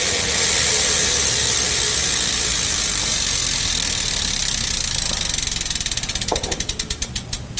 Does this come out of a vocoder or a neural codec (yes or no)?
no